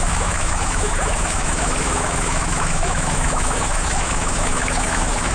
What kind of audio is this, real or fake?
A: fake